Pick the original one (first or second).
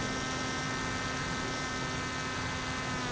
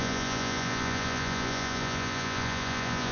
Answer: first